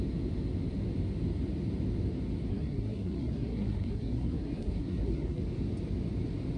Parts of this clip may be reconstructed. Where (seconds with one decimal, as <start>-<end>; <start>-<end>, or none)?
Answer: 2.5-5.4